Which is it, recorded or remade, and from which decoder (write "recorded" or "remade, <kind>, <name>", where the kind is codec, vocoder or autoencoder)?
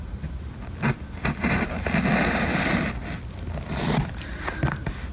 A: recorded